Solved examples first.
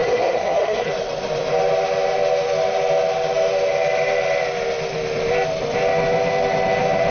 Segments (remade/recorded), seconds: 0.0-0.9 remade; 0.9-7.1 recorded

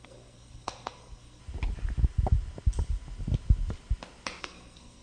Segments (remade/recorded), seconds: 0.0-1.4 remade; 1.4-4.4 recorded; 4.4-5.0 remade

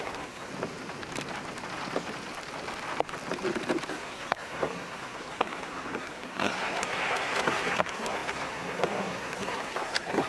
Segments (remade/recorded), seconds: 0.0-0.5 remade; 0.5-3.9 recorded; 3.9-10.3 remade

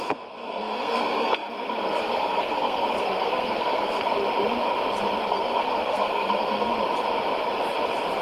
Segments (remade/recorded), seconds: 0.0-4.1 remade; 4.1-5.3 recorded; 5.3-6.7 remade; 6.7-8.2 recorded

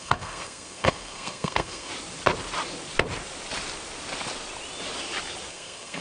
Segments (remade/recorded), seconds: 0.0-1.9 remade; 1.9-5.5 recorded; 5.5-6.0 remade

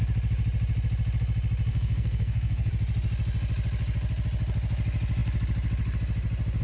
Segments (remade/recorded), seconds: 0.0-1.7 recorded; 1.7-2.7 remade; 2.7-6.6 recorded

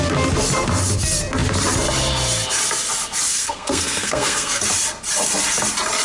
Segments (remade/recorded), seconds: 0.0-3.3 recorded; 3.3-4.6 remade; 4.6-6.0 recorded